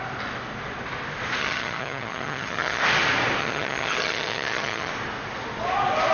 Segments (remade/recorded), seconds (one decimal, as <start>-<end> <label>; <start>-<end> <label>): 0.0-1.4 recorded; 1.4-2.8 remade; 2.8-3.4 recorded; 3.4-4.9 remade; 4.9-6.1 recorded